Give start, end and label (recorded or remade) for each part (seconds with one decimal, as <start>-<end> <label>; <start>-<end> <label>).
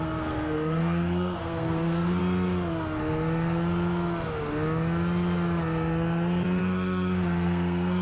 0.0-2.2 remade; 2.2-6.6 recorded; 6.6-8.0 remade